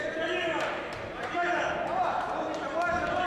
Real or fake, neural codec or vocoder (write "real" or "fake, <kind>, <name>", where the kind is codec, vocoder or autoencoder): fake, vocoder, BigVGAN v2